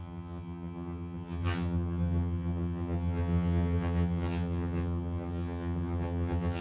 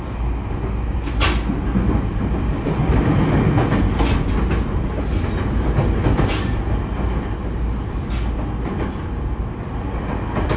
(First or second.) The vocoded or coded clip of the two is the first